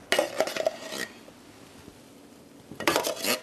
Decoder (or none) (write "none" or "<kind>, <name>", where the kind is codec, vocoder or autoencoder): none